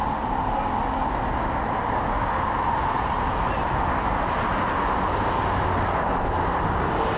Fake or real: real